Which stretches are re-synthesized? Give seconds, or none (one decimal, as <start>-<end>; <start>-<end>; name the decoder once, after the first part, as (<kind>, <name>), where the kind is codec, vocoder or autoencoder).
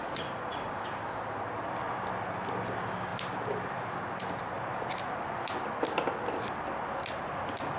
none